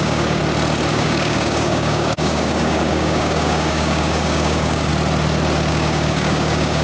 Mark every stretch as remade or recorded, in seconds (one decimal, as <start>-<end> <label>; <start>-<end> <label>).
0.0-0.4 remade; 0.4-0.9 recorded; 0.9-4.9 remade; 4.9-5.7 recorded; 5.7-6.8 remade